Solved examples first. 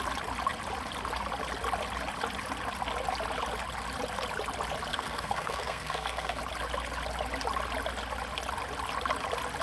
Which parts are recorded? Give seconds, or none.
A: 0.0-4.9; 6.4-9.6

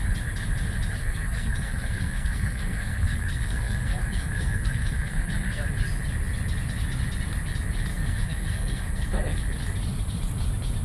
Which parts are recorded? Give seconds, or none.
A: 0.0-1.0; 5.6-7.9; 9.4-10.8